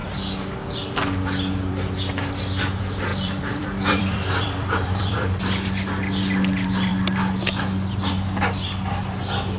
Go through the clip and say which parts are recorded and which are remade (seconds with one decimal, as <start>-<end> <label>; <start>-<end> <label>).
0.0-3.1 recorded; 3.1-5.4 remade; 5.4-9.6 recorded